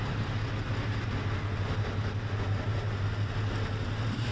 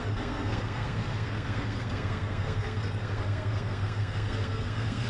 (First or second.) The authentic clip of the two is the first